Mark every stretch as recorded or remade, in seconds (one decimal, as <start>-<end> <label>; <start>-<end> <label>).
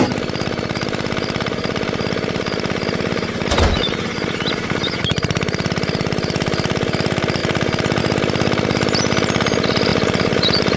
0.0-9.9 recorded; 9.9-10.8 remade